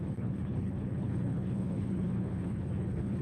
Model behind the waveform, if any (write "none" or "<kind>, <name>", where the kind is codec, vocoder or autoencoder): codec, HILCodec